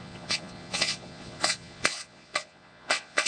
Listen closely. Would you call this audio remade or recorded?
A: remade